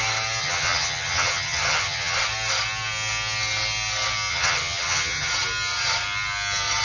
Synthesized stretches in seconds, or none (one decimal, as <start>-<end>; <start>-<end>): 0.4-2.2; 4.3-5.3